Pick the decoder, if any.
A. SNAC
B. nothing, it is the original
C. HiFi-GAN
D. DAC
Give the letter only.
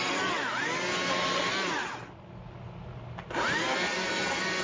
B